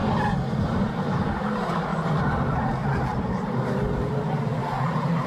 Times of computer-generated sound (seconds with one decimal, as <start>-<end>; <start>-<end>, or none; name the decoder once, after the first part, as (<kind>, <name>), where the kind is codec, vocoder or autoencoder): 0.6-1.9 (vocoder, BigVGAN v2); 3.7-5.3